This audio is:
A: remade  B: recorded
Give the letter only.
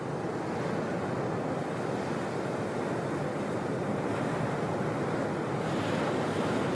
B